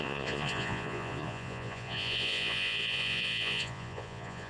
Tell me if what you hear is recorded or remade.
remade